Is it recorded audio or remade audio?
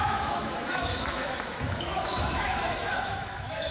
remade